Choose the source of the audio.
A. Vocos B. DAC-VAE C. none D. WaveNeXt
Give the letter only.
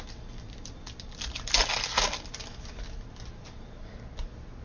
C